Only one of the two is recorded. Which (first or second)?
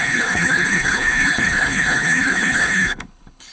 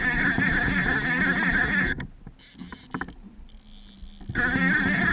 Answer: second